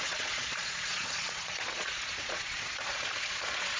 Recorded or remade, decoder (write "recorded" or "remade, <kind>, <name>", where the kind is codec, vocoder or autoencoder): remade, vocoder, Vocos